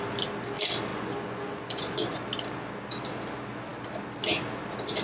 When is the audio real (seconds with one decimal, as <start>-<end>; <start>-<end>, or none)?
0.0-0.9; 2.2-5.0